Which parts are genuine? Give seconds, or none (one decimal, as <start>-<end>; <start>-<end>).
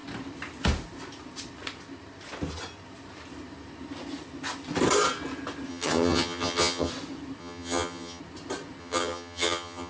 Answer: 0.0-5.7; 6.9-7.4; 8.2-8.8